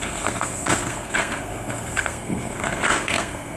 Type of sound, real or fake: fake